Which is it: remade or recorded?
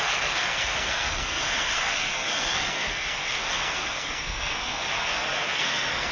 remade